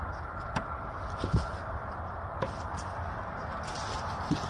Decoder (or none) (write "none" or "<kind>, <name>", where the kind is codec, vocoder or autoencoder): none